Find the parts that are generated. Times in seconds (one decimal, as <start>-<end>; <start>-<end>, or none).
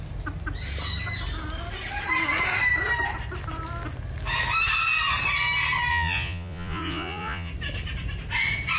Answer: 5.9-7.5